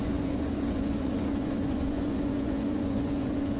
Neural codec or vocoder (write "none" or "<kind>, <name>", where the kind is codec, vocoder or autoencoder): vocoder, Vocos